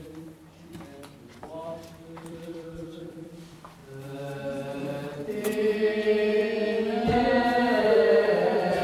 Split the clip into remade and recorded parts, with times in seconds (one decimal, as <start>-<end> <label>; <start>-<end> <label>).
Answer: 0.0-3.8 remade; 3.8-7.8 recorded; 7.8-8.8 remade